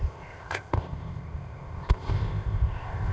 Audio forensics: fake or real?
fake